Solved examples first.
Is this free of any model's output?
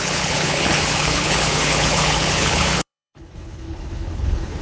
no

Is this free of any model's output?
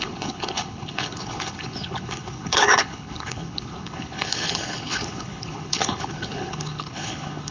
no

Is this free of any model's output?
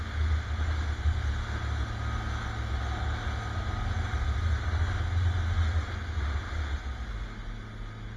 yes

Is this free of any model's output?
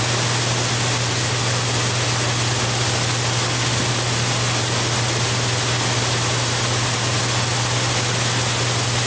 yes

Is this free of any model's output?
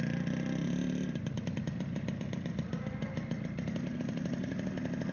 yes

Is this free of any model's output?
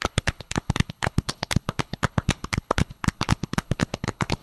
no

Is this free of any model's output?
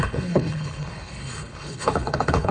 no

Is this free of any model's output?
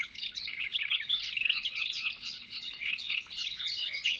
no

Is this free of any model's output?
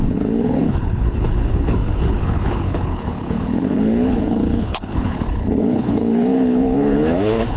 no